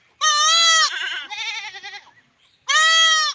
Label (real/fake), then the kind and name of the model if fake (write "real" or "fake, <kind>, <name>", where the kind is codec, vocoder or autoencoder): real